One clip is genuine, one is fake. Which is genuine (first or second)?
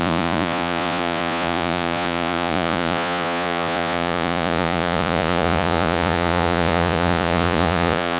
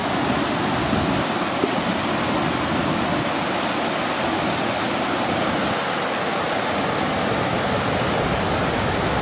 second